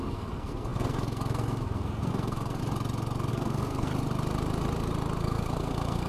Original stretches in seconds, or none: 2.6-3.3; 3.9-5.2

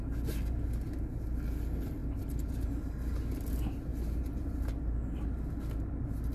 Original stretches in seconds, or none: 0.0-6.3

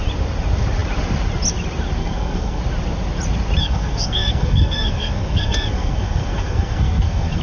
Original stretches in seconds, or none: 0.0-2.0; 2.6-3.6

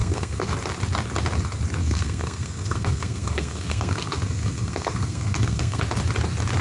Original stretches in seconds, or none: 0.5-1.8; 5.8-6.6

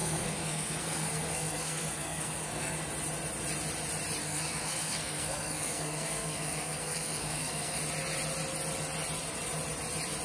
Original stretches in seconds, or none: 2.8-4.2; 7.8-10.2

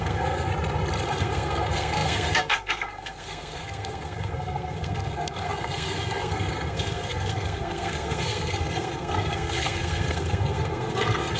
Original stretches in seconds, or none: 0.5-1.2

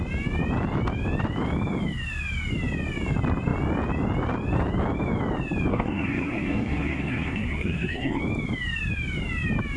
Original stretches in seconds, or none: 0.0-5.7; 8.2-9.8